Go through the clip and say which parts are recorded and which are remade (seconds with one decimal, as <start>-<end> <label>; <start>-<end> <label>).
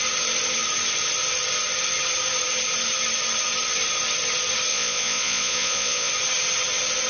0.0-4.7 recorded; 4.7-6.1 remade; 6.1-7.1 recorded